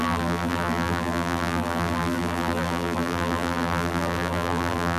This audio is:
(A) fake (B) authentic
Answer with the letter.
A